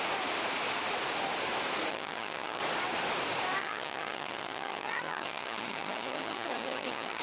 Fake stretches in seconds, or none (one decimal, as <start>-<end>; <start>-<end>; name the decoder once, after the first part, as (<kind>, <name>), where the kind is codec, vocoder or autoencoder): 1.9-2.6 (vocoder, HiFi-GAN); 3.6-7.2